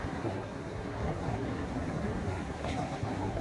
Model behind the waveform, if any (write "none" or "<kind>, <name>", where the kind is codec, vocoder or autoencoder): codec, SNAC